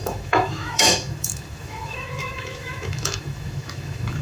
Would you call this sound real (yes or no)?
no